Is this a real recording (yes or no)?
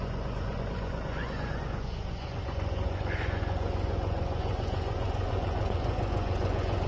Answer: no